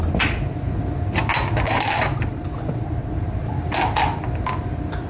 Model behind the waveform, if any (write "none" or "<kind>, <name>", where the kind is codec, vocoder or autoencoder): none